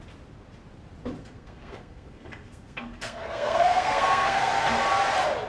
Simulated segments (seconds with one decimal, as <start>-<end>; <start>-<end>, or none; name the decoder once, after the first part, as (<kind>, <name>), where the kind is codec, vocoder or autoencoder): 1.2-4.5 (codec, SNAC)